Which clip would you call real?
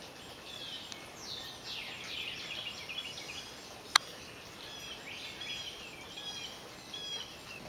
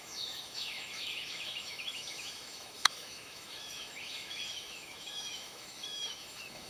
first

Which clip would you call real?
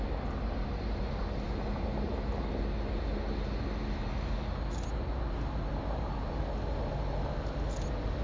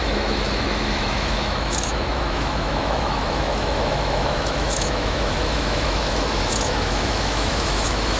first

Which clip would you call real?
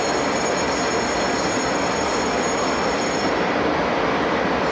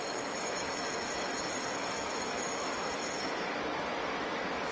first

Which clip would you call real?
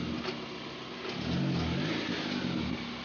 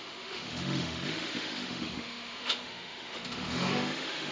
first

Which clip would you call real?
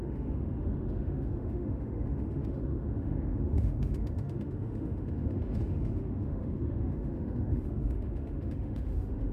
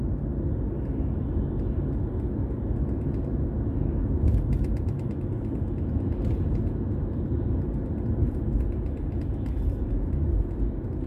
second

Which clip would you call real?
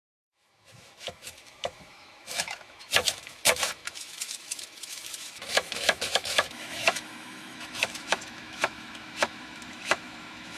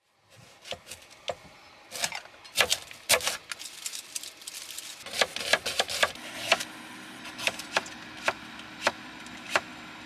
second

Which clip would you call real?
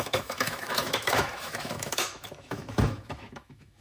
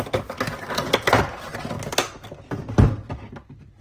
second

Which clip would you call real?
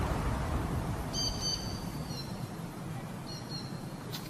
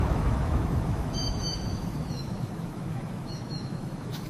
first